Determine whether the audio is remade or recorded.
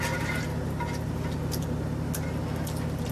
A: recorded